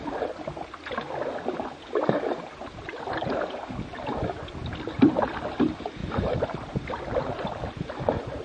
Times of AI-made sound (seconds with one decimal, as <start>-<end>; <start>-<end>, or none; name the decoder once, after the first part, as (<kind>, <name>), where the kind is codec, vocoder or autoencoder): 2.6-3.6 (vocoder, BigVGAN v2); 6.0-6.9

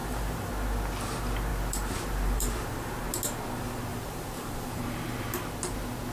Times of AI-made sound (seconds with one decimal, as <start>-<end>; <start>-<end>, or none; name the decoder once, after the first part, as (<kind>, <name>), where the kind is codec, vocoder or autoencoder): 0.0-0.5 (vocoder, BigVGAN v2); 1.5-2.9; 3.9-4.8